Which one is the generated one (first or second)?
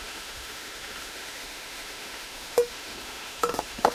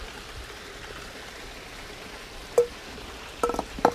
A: first